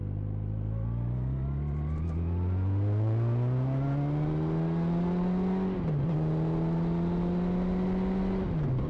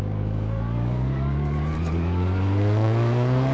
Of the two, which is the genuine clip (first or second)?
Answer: first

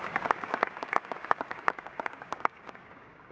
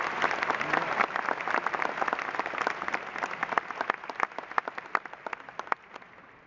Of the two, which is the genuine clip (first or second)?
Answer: second